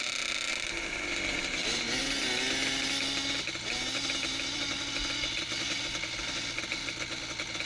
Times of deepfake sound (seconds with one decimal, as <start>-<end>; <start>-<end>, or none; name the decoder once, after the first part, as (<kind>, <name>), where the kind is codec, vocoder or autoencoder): none